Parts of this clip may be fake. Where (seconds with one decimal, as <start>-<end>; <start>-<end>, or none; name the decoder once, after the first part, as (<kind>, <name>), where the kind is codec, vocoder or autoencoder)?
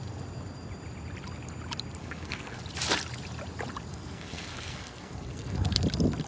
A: 2.0-2.6 (codec, SNAC); 3.9-5.8